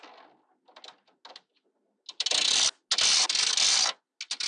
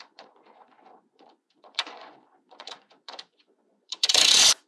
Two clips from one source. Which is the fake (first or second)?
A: second